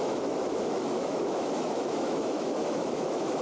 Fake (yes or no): yes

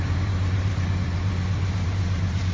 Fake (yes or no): yes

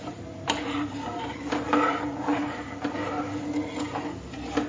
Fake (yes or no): no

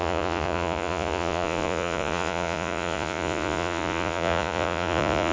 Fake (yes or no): yes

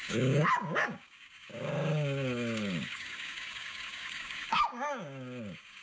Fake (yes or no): yes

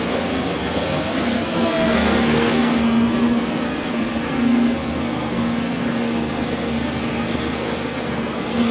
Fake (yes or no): yes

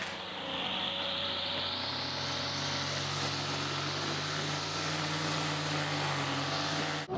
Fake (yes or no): no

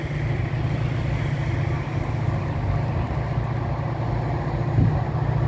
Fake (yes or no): no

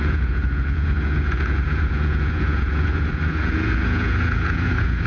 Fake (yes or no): yes